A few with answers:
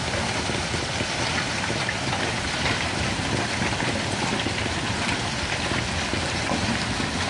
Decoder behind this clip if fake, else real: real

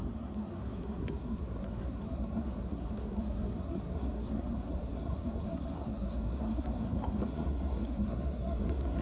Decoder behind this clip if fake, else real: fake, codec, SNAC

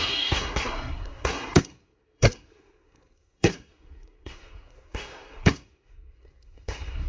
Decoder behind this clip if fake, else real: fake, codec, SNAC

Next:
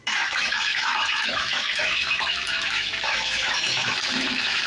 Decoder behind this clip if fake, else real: fake, autoencoder, DAC-VAE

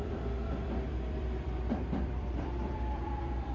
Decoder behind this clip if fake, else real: fake, vocoder, BigVGAN v2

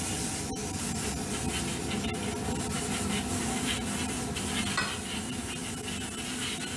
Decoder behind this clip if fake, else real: real